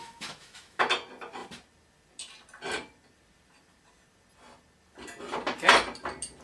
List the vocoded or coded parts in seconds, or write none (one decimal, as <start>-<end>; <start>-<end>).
0.0-0.8